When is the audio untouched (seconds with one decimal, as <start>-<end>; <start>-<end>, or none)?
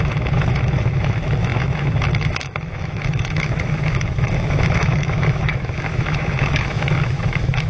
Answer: none